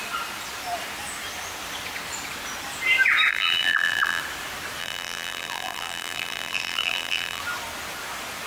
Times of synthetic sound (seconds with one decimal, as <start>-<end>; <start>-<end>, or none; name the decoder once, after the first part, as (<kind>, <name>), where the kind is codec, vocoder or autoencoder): 3.3-4.2 (vocoder, BigVGAN v2); 4.8-7.4